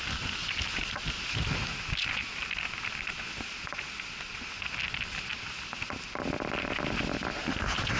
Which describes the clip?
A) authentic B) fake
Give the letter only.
A